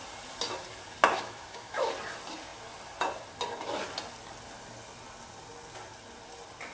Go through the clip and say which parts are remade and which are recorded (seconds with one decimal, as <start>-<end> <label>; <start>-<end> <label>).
0.0-1.1 recorded; 1.1-1.9 remade; 1.9-6.7 recorded